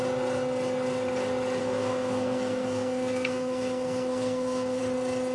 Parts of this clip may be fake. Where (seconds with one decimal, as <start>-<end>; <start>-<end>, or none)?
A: 1.6-4.8